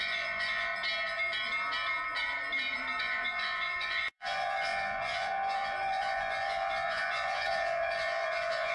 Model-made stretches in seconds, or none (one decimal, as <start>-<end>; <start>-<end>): 0.0-0.7; 3.0-8.7